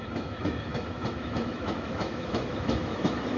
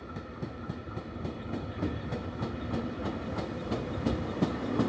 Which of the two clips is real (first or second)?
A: second